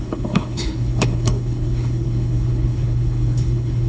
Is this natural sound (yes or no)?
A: no